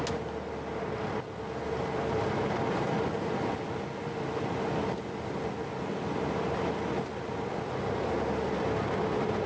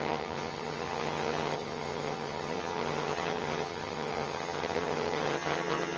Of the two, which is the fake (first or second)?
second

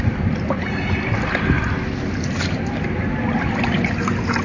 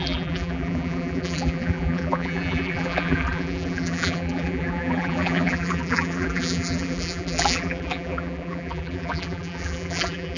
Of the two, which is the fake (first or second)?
second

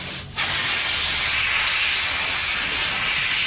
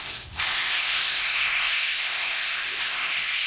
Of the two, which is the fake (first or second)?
second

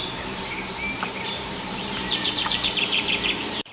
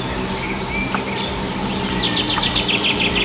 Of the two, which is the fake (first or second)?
first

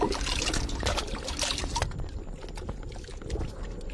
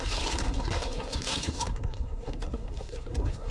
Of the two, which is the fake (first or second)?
second